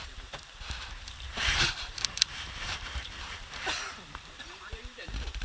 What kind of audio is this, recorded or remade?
remade